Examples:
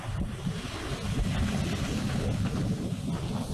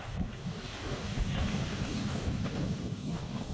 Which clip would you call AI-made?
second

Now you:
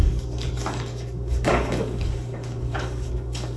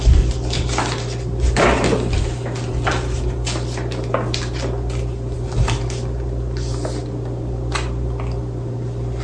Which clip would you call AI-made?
first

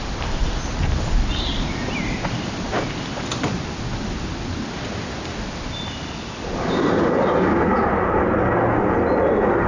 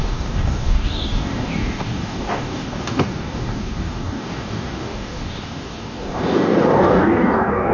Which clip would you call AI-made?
second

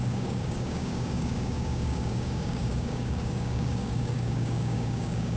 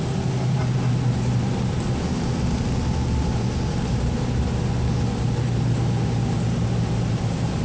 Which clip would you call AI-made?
first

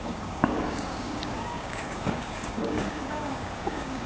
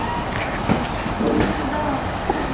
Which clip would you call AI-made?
first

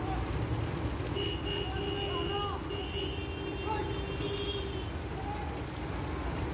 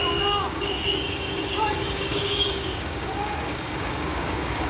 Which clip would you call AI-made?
second